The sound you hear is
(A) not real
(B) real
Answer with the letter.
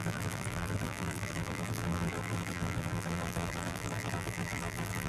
A